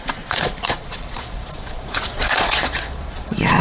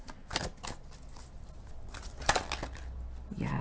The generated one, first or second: first